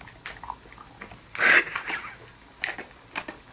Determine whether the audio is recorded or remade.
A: recorded